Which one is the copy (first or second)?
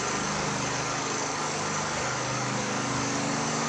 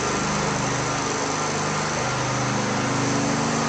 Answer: first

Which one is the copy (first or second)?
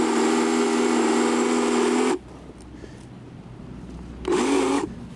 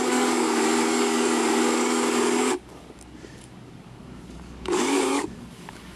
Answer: second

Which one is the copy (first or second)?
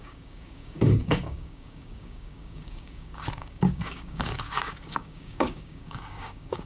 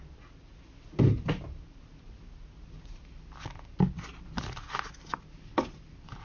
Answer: first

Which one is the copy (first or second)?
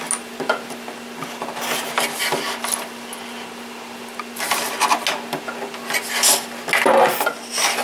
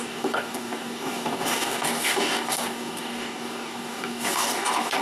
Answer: second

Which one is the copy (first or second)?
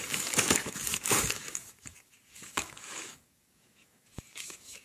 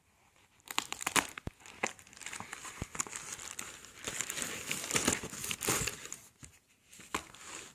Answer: first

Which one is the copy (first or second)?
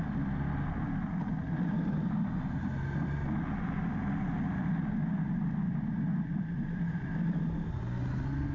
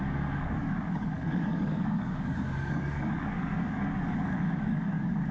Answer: second